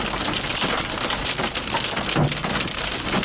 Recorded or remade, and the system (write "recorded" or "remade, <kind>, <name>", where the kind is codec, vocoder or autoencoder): recorded